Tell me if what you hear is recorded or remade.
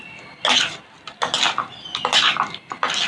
recorded